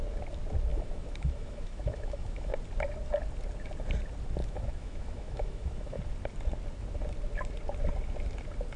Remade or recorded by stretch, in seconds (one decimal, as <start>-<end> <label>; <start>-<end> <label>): 0.0-0.7 recorded; 0.7-2.5 remade; 2.5-4.4 recorded; 4.4-6.0 remade; 6.0-8.8 recorded